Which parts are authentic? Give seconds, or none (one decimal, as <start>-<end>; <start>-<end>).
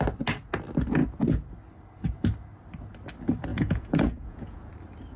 0.0-3.5; 4.7-5.2